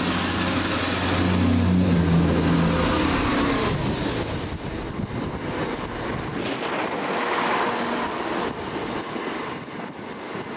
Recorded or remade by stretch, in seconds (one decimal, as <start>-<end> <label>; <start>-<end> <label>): 0.0-10.6 recorded